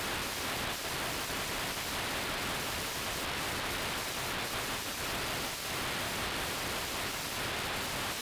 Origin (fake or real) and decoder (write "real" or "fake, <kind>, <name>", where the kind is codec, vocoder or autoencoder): real